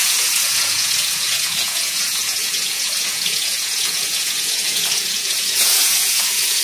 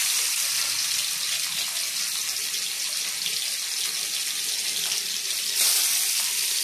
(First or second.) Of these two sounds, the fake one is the first